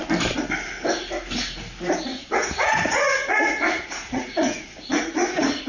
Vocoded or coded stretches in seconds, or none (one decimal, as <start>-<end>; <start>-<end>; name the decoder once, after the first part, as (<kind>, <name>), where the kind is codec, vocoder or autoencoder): 2.1-5.7 (vocoder, Vocos)